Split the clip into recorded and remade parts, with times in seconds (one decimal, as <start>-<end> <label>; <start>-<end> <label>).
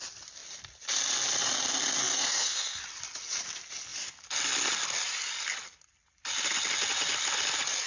0.0-2.0 recorded; 2.0-2.8 remade; 2.8-7.9 recorded